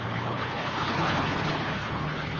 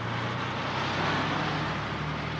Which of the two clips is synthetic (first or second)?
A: first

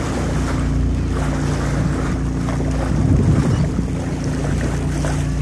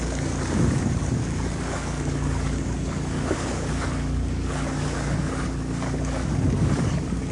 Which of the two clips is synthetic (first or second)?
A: second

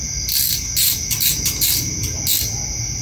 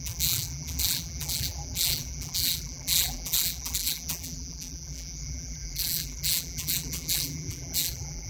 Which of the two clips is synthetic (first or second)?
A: second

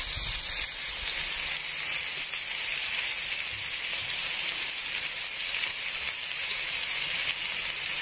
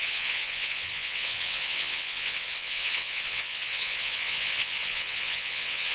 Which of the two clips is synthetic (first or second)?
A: second